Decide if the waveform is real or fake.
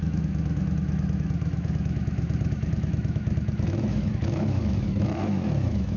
fake